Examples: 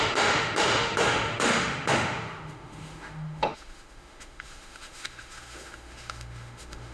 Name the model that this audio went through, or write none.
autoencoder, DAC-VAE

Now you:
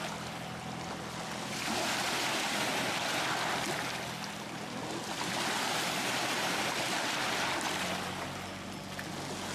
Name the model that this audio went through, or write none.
none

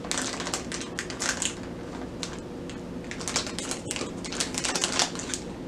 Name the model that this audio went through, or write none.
none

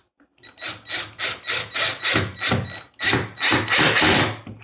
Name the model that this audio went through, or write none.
none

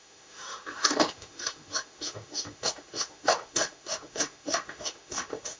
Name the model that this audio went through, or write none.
autoencoder, DAC-VAE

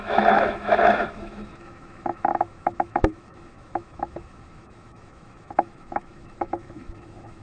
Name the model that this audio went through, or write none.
autoencoder, DAC-VAE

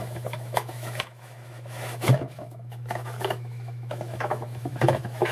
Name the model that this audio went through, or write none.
autoencoder, DAC-VAE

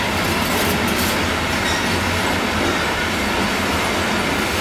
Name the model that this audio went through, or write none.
none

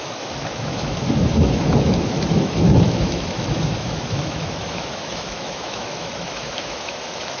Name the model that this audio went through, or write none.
autoencoder, DAC-VAE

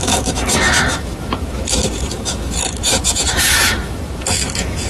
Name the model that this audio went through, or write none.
autoencoder, DAC-VAE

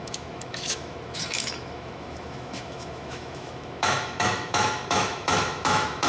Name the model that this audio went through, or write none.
autoencoder, DAC-VAE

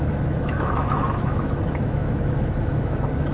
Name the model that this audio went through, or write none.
autoencoder, DAC-VAE